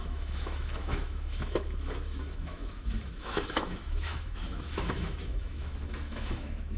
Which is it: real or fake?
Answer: fake